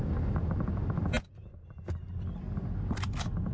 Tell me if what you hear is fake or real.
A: real